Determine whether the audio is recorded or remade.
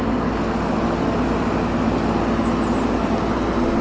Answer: recorded